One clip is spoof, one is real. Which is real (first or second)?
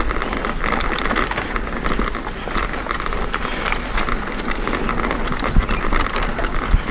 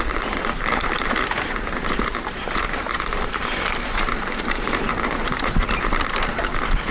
first